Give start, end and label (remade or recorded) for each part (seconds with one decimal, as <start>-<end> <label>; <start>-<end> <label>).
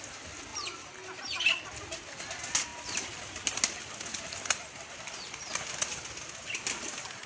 0.0-7.3 recorded